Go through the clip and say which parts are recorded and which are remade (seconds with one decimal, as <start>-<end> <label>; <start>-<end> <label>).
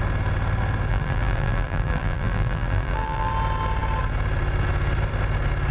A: 0.0-0.9 recorded; 0.9-3.3 remade; 3.3-5.7 recorded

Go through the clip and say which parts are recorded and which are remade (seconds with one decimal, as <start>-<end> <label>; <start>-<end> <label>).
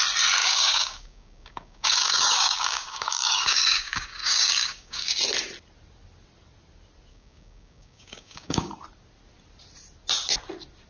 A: 0.0-0.4 recorded; 0.4-5.2 remade; 5.2-7.1 recorded; 7.1-8.7 remade; 8.7-10.9 recorded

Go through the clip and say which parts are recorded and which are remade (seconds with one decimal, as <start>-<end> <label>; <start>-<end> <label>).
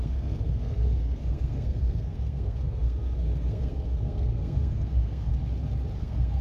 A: 0.0-5.3 remade; 5.3-6.0 recorded; 6.0-6.4 remade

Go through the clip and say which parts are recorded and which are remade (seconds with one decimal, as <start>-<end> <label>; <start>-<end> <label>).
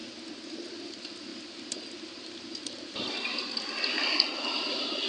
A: 0.0-1.3 recorded; 1.3-3.7 remade; 3.7-5.1 recorded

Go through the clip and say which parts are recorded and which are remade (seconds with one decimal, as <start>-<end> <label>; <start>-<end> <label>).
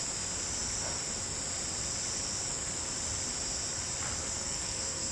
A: 0.0-4.2 recorded; 4.2-5.1 remade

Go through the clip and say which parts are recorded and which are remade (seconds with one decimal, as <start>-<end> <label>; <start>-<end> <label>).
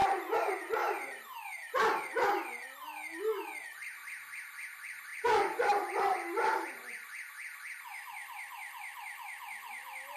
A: 0.0-10.2 recorded